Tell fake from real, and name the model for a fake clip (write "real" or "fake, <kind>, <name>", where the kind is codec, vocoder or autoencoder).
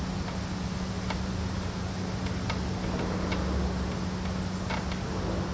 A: real